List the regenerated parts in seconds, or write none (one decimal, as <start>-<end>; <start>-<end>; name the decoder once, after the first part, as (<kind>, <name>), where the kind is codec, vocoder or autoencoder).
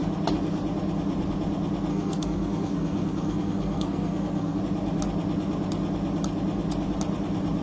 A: 1.9-4.6 (codec, SNAC)